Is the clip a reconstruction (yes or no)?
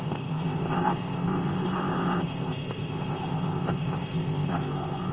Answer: yes